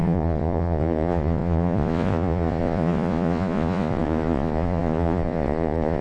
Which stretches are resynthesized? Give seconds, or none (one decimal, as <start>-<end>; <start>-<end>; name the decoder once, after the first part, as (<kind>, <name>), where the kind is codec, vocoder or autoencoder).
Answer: 0.0-6.0 (vocoder, Vocos)